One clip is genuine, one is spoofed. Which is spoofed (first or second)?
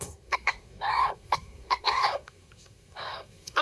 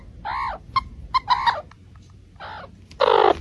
first